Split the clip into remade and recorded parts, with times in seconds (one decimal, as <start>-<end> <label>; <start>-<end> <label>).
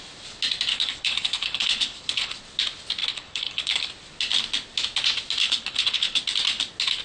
0.0-0.7 recorded; 0.7-2.4 remade; 2.4-3.0 recorded; 3.0-3.9 remade; 3.9-5.4 recorded; 5.4-6.2 remade; 6.2-7.0 recorded